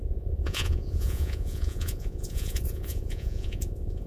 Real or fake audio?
fake